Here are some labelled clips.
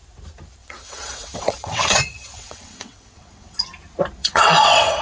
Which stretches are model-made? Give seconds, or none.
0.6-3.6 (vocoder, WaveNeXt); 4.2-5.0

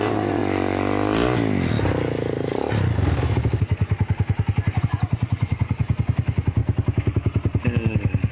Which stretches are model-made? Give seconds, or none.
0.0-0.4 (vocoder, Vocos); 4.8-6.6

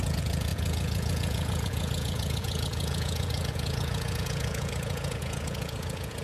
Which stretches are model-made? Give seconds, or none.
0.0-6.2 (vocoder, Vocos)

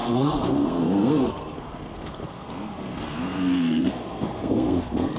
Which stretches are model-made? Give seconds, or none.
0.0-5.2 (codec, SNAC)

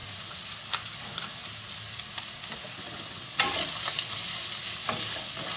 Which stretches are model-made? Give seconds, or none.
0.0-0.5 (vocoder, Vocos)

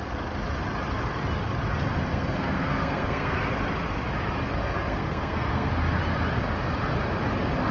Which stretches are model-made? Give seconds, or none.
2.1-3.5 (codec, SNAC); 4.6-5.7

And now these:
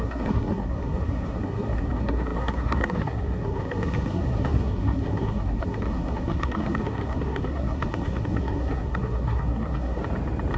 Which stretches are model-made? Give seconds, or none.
0.0-10.0 (codec, SNAC)